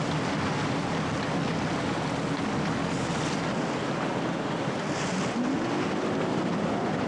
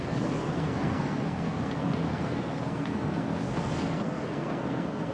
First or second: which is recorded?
first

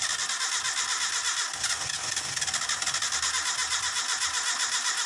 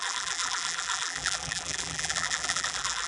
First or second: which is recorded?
first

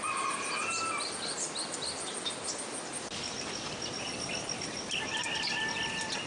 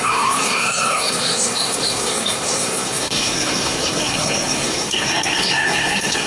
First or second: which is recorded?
first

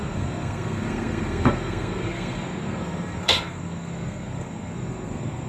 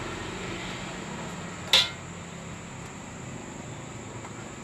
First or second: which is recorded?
second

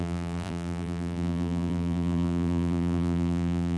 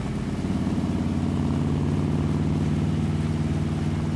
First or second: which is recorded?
second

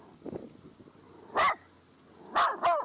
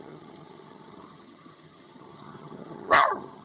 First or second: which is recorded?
first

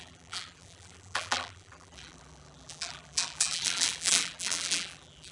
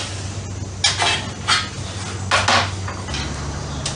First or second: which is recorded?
second